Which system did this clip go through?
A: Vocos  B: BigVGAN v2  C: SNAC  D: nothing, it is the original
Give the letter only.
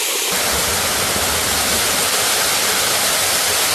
D